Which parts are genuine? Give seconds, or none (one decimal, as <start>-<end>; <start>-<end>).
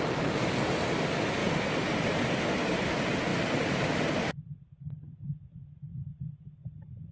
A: 0.0-1.4; 2.2-3.3; 4.0-7.1